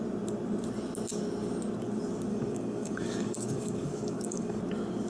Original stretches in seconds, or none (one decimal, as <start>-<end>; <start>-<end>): 0.0-2.3; 4.6-5.1